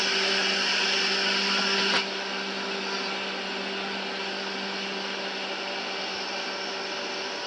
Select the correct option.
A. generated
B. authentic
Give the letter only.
B